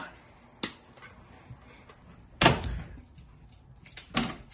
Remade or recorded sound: recorded